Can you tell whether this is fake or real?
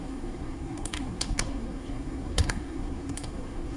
fake